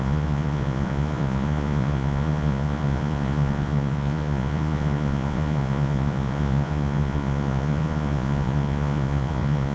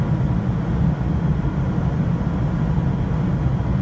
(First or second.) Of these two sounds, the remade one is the first